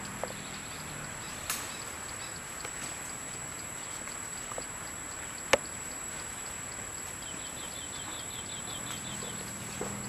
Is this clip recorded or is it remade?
recorded